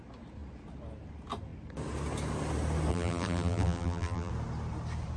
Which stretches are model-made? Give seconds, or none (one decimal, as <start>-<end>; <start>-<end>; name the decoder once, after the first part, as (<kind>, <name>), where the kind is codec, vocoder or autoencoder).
2.9-4.3 (vocoder, BigVGAN v2)